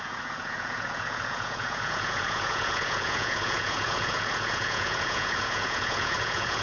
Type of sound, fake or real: fake